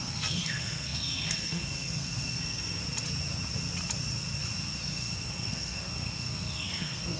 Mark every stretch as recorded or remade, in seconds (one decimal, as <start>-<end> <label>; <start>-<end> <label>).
0.0-2.8 remade; 2.8-4.9 recorded; 4.9-7.2 remade